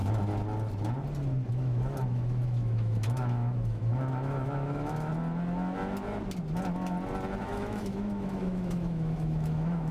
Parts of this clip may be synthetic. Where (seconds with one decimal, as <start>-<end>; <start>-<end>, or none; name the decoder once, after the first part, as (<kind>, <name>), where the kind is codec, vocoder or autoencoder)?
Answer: 1.5-5.1 (autoencoder, DAC-VAE); 7.4-9.9